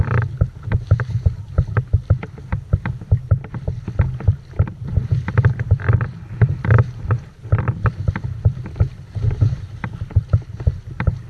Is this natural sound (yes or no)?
no